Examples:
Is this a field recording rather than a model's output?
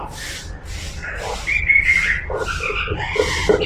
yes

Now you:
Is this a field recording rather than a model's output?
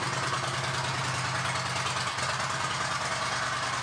yes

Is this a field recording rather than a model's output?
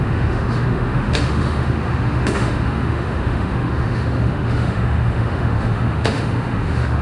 no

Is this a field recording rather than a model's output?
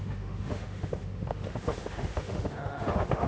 no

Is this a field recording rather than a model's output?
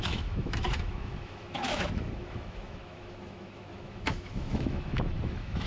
no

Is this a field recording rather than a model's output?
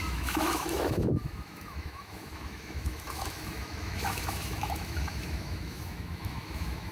no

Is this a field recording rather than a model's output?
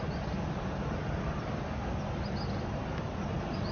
yes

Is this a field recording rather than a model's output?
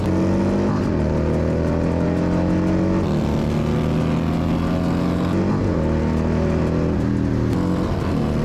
yes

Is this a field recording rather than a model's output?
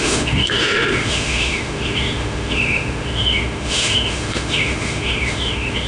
no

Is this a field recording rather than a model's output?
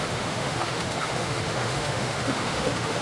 no